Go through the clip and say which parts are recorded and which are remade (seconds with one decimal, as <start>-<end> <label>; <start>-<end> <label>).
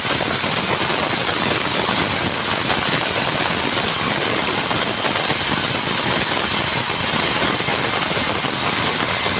0.0-9.4 recorded